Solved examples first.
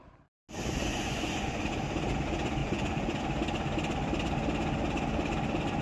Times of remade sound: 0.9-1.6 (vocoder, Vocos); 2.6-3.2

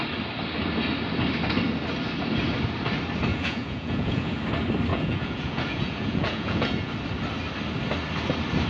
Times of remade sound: 3.3-4.4 (vocoder, Vocos); 4.9-6.9

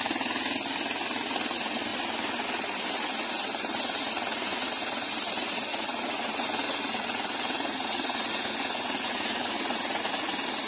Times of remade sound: 5.7-10.1 (vocoder, Vocos)

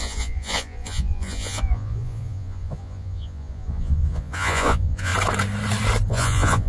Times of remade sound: 0.0-5.1 (vocoder, Vocos); 6.1-6.7

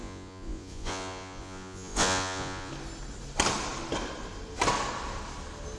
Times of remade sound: 0.0-2.7 (vocoder, Vocos)